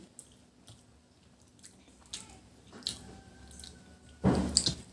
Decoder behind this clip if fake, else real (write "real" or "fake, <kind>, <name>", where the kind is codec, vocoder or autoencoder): real